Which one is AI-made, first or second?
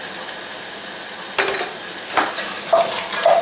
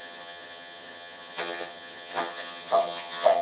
second